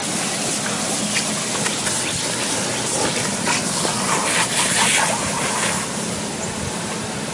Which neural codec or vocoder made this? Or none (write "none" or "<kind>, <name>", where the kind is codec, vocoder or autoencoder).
none